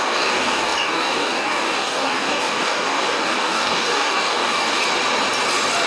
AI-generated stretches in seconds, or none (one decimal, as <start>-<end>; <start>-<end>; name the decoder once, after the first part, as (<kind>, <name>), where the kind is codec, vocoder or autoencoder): 0.0-4.8 (codec, DAC)